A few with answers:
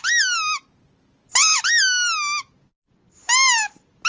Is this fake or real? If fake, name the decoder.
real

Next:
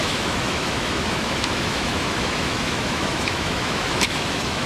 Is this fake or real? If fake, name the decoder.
fake, autoencoder, DAC-VAE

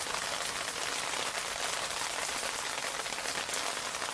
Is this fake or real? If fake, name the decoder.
real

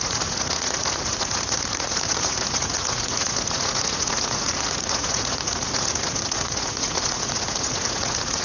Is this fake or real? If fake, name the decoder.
fake, vocoder, Vocos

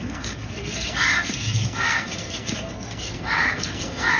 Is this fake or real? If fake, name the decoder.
fake, codec, SNAC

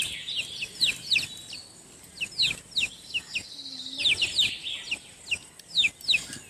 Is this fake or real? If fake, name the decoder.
real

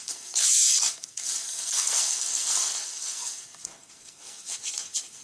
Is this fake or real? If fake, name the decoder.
fake, codec, SNAC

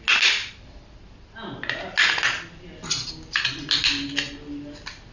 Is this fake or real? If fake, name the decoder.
real